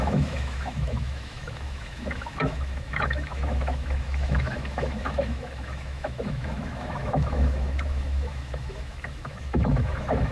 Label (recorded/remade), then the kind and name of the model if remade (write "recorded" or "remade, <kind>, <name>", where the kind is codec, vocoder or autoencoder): remade, autoencoder, DAC-VAE